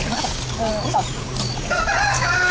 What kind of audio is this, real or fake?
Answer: real